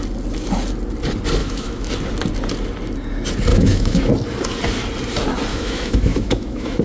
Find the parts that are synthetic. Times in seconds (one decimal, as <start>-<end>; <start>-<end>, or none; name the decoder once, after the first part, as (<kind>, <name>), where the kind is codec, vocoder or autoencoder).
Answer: 1.4-1.9 (autoencoder, DAC-VAE); 3.5-4.1; 5.5-6.8